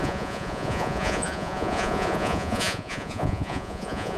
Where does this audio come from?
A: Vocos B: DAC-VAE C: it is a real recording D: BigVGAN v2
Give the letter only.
A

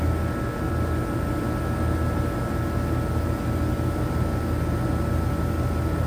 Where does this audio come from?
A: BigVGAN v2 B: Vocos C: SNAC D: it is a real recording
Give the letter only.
D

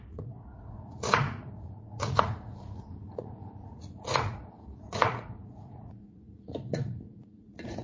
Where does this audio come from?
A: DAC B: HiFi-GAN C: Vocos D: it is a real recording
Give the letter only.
C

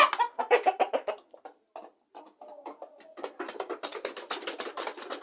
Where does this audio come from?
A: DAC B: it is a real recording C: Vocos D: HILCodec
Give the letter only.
B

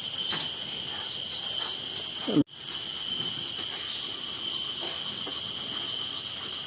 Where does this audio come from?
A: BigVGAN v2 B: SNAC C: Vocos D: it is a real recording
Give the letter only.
D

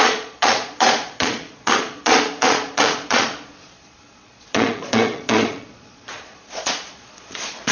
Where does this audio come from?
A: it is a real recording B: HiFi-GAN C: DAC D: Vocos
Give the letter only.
D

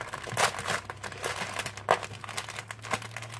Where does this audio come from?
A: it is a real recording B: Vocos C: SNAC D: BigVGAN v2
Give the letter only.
A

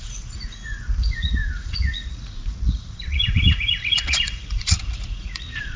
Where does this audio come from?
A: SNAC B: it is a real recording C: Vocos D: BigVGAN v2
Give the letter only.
C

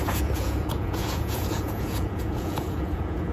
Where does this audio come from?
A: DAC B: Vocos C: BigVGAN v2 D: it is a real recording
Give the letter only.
B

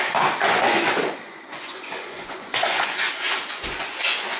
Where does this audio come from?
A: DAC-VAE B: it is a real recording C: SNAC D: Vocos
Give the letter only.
D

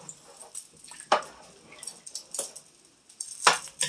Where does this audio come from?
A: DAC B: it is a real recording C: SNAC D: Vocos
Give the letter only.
B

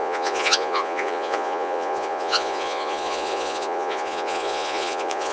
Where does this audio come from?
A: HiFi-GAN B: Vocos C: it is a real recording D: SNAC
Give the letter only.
B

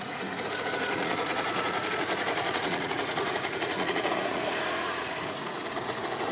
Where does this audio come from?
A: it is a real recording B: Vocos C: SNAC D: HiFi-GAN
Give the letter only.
B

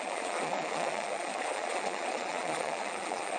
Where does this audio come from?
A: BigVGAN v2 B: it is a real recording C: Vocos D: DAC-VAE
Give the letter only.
C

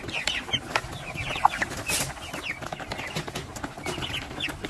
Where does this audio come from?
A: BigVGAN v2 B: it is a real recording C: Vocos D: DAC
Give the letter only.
B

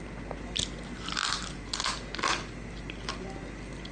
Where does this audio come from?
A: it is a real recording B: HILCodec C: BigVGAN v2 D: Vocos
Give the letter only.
A